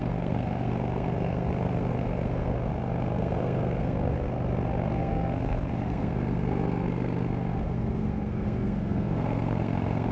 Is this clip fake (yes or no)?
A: yes